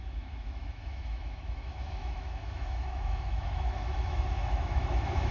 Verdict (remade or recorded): remade